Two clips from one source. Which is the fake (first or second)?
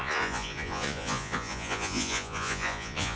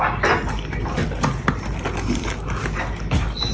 first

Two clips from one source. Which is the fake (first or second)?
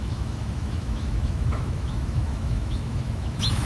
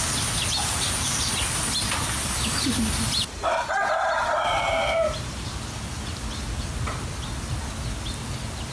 first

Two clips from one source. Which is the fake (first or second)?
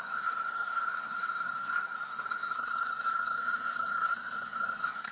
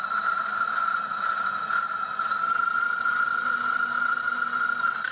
first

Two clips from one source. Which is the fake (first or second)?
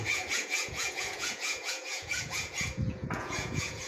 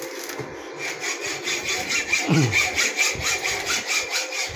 first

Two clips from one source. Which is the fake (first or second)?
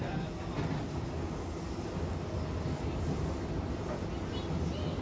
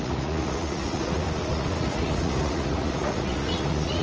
second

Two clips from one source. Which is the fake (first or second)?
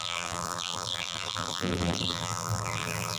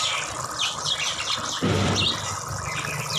first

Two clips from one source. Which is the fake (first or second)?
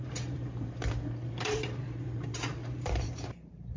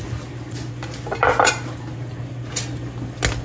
first